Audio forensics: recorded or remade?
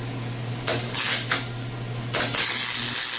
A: recorded